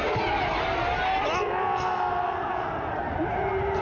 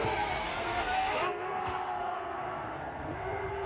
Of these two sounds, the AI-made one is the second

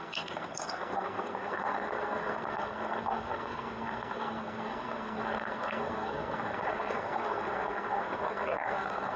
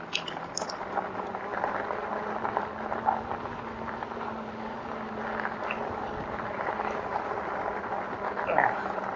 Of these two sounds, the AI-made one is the first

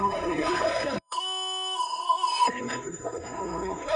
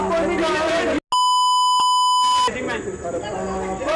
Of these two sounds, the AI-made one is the first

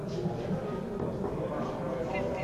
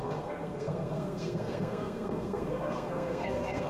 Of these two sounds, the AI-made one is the second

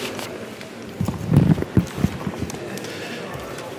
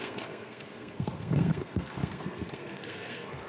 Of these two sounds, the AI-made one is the second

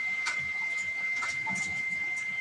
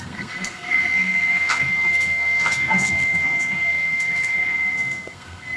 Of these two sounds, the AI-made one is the second